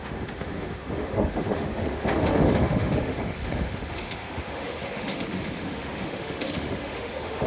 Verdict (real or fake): fake